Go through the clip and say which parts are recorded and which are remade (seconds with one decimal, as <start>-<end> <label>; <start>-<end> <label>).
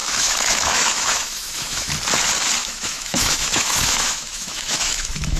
0.0-1.9 remade; 1.9-2.6 recorded; 2.6-5.4 remade